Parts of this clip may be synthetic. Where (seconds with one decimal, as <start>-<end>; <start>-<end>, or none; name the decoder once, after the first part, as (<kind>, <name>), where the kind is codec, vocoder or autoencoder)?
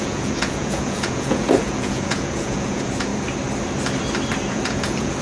0.0-3.1 (vocoder, Vocos); 4.5-5.2